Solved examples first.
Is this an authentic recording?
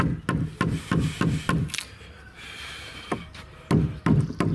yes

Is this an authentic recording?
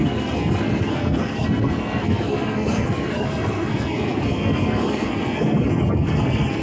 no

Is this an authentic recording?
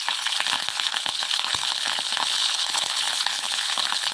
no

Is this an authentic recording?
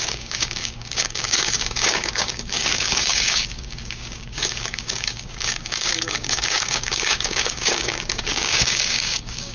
no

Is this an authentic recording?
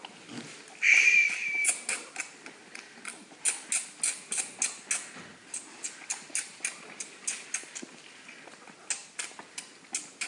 yes